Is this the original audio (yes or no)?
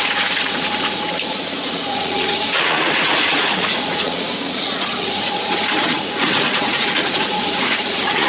no